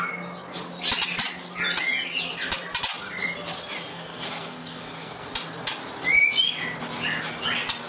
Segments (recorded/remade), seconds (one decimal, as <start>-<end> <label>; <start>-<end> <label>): 0.0-3.9 recorded; 3.9-5.3 remade; 5.3-7.9 recorded